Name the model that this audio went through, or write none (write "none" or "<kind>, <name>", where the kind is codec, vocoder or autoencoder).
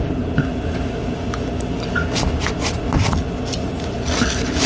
none